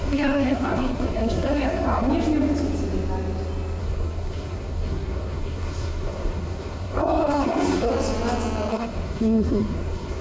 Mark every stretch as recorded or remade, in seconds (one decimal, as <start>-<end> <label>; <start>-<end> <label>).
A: 0.0-2.1 remade; 2.1-3.8 recorded; 3.8-7.9 remade; 7.9-8.7 recorded; 8.7-10.2 remade